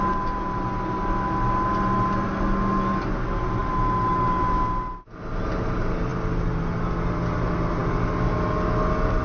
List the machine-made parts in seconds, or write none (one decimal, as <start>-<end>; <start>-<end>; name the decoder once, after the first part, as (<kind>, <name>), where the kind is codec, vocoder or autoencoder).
none